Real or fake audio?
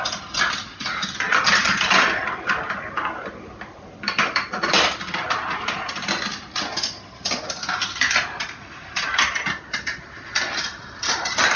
real